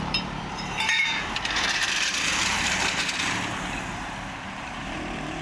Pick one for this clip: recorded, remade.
remade